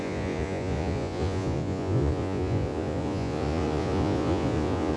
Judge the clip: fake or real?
fake